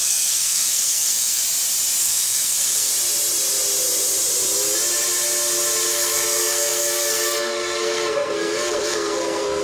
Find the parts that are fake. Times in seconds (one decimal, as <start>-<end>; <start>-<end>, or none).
0.0-1.4; 2.0-2.9; 5.9-9.6